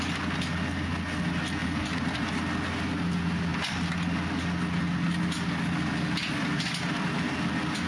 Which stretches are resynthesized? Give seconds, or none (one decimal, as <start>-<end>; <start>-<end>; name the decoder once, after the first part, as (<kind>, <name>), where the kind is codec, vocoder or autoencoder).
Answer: 1.6-2.4 (vocoder, BigVGAN v2)